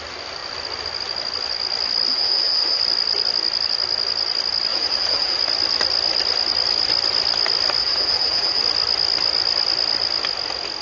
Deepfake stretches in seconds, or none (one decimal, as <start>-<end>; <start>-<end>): 2.1-2.8; 4.7-5.4; 7.8-8.6